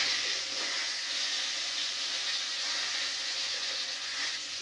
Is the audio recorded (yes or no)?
no